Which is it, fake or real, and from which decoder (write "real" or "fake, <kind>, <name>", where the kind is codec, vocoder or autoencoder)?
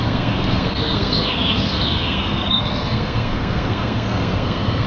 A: fake, codec, SNAC